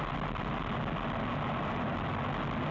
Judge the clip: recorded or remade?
recorded